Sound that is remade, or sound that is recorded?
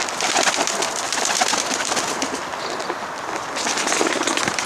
recorded